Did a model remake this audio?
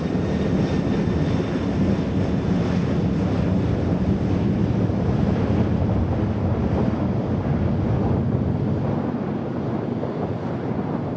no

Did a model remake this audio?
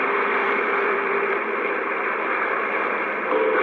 yes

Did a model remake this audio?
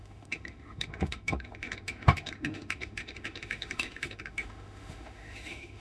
yes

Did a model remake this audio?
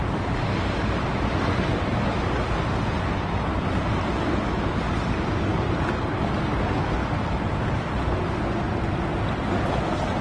no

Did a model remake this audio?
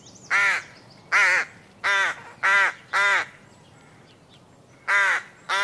no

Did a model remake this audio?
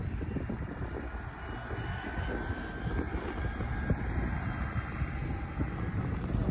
no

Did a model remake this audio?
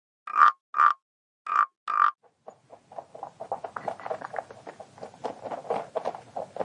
no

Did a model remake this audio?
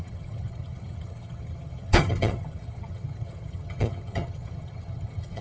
yes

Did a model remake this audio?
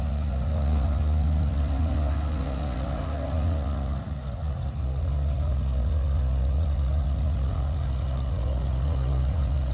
yes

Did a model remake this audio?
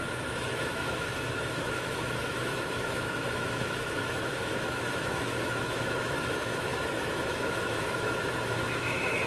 yes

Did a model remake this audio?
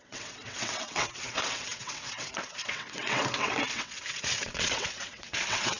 yes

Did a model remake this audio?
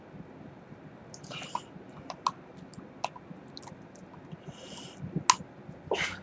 no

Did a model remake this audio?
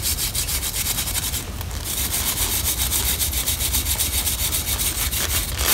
no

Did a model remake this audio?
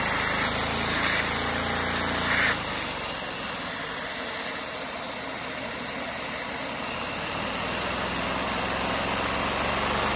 no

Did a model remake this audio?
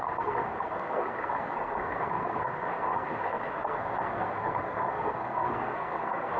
yes